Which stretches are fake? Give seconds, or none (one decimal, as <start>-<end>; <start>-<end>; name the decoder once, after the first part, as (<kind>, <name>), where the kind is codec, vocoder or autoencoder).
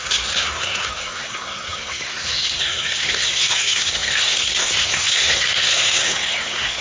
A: 0.0-6.8 (codec, SNAC)